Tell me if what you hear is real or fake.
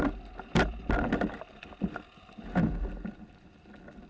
real